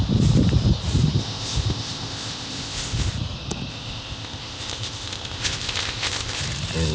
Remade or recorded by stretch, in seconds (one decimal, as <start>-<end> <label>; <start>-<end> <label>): 0.0-1.2 recorded; 1.2-3.1 remade; 3.1-3.7 recorded; 3.7-6.4 remade; 6.4-6.9 recorded